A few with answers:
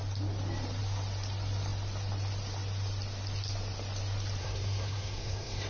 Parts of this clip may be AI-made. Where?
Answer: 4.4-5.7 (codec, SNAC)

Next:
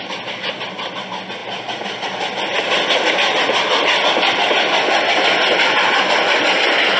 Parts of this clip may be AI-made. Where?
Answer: none

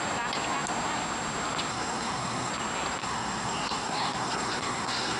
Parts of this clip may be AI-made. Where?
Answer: 1.7-2.5 (codec, SNAC); 3.0-5.2

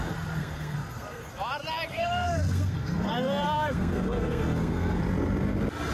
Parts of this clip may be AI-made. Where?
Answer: 0.4-1.3 (codec, SNAC); 1.9-5.0

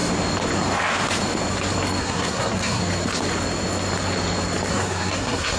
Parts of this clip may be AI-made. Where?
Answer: 2.0-2.8 (codec, SNAC); 4.7-5.6